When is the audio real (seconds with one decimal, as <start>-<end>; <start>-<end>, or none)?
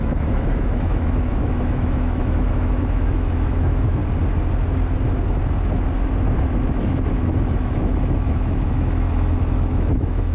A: 4.0-7.1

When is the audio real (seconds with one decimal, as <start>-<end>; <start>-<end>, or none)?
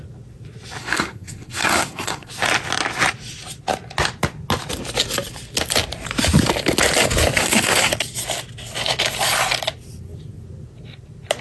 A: 0.0-0.8; 2.3-7.4; 7.9-11.4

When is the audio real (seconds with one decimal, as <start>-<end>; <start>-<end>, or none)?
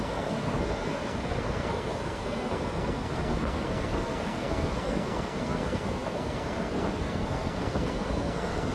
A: none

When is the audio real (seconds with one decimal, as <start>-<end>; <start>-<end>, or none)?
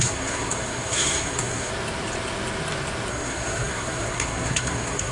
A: 1.7-3.1